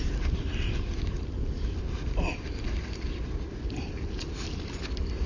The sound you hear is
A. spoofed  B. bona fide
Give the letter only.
B